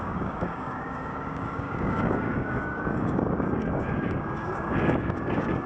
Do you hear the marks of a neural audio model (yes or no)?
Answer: yes